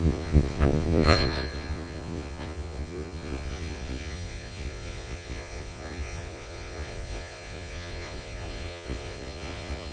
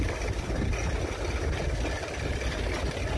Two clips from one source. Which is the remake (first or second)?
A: first